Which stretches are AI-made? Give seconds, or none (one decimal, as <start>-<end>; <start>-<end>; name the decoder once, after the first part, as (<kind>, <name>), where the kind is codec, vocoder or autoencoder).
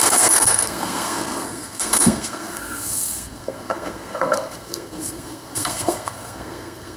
0.0-7.0 (codec, SNAC)